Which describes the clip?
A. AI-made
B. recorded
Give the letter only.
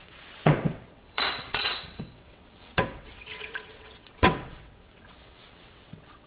A